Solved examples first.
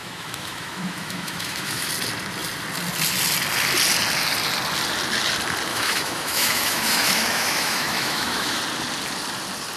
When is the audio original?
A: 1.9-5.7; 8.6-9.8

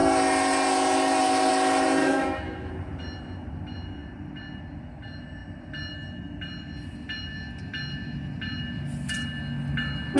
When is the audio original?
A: 0.0-2.0; 2.7-10.2

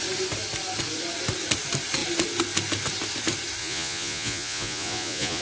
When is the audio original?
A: 0.0-3.6

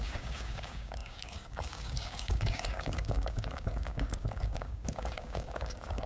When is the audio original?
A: none

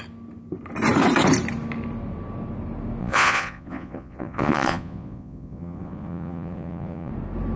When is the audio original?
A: 0.0-3.0; 7.1-7.6

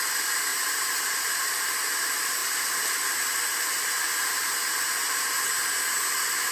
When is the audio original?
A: 0.0-0.5; 1.5-5.0; 6.1-6.5

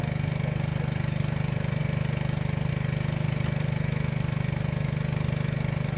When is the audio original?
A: 0.0-6.0